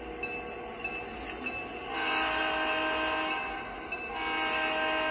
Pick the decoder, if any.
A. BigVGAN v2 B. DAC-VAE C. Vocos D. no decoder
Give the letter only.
D